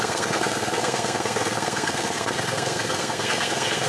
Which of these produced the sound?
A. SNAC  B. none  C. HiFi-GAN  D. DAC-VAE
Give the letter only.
A